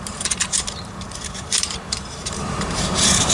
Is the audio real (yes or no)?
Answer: no